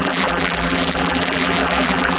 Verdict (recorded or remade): remade